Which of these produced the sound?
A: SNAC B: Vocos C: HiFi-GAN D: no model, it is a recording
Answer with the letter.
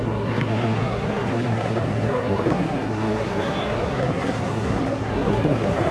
A